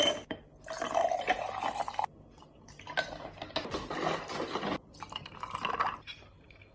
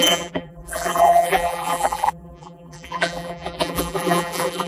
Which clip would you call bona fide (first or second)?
first